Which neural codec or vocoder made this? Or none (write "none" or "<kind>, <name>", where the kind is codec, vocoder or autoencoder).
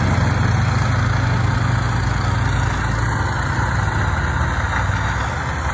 none